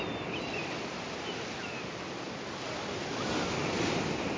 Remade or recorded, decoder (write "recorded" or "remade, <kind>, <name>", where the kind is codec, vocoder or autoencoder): recorded